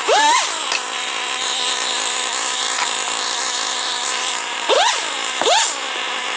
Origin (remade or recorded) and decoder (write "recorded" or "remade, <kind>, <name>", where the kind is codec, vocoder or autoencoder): remade, vocoder, BigVGAN v2